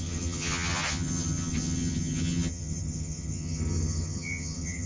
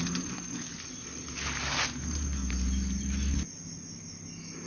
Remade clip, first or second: first